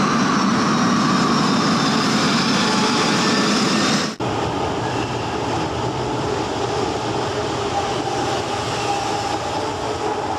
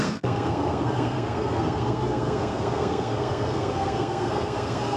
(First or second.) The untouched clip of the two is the first